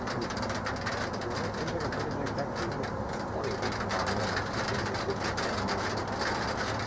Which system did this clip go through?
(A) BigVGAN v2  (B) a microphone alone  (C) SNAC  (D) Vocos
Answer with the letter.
B